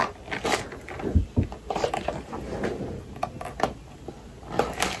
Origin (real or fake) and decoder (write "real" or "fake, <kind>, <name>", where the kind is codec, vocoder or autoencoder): real